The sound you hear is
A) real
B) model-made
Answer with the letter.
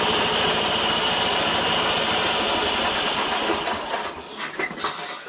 A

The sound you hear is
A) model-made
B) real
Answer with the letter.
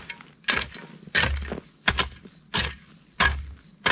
B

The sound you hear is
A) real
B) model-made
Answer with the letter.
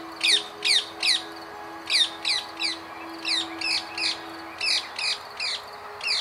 A